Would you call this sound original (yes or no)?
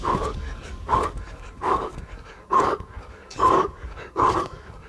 no